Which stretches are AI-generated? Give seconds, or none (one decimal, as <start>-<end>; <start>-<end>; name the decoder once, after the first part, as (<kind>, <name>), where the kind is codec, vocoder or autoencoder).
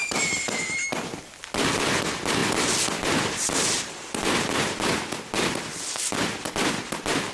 none